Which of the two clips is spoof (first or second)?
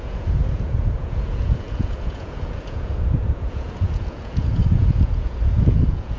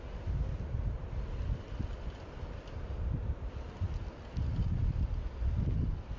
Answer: first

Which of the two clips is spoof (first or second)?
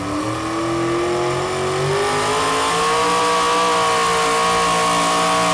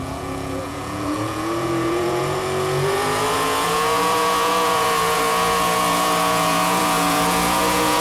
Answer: second